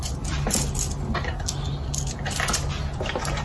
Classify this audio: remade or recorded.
recorded